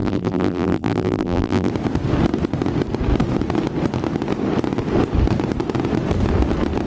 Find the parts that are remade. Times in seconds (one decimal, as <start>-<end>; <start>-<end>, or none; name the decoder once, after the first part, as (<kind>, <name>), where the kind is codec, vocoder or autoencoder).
0.0-1.7 (vocoder, BigVGAN v2)